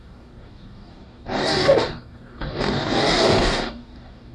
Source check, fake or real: fake